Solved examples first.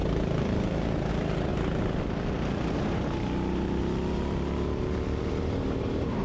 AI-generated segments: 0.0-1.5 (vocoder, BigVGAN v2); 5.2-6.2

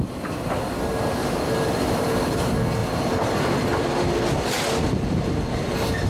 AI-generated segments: 1.2-2.4 (vocoder, BigVGAN v2); 2.8-3.9

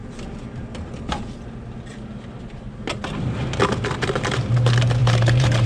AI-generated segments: 5.0-5.7 (vocoder, BigVGAN v2)

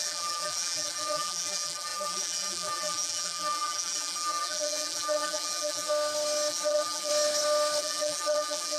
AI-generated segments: 0.0-5.9 (vocoder, BigVGAN v2); 6.5-7.1; 7.8-8.8